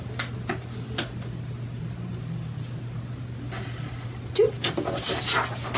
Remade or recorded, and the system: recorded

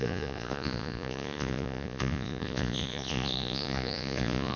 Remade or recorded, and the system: remade, vocoder, Vocos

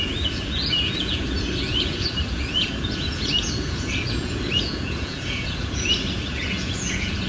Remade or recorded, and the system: remade, vocoder, Vocos